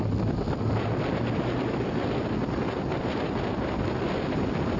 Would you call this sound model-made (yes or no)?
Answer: no